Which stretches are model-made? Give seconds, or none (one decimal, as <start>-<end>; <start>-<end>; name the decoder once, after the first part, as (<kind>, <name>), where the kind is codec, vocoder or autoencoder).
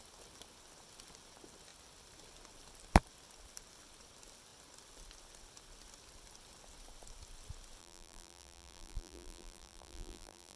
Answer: 7.8-10.6 (vocoder, BigVGAN v2)